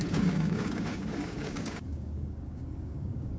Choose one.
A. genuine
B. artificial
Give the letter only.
B